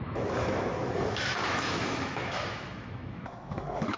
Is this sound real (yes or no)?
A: no